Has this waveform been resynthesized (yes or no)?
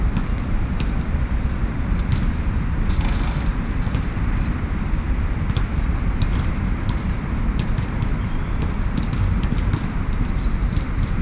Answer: yes